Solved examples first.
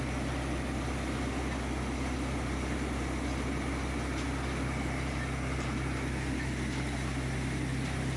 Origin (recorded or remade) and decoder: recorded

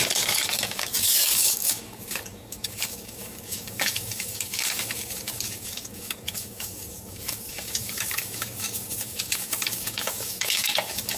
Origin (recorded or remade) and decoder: remade, codec, DAC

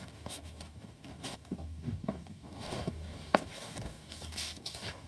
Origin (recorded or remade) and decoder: remade, codec, DAC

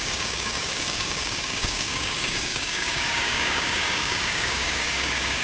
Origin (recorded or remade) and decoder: remade, codec, DAC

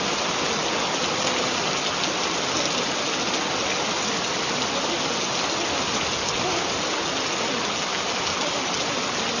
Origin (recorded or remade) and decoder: recorded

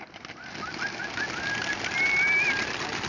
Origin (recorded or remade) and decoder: recorded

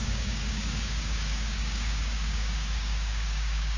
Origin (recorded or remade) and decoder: remade, codec, DAC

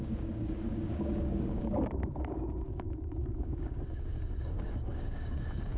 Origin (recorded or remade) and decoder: remade, codec, DAC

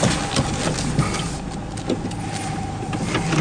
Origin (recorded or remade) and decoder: recorded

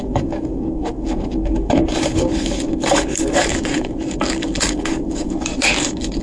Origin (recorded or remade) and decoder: remade, codec, DAC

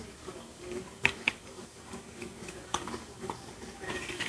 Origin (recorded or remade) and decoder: remade, codec, DAC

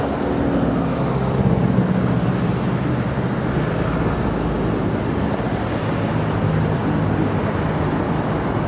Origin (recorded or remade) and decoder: recorded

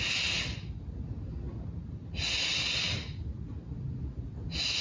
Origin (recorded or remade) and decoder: recorded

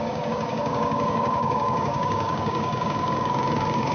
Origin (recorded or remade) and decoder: remade, codec, DAC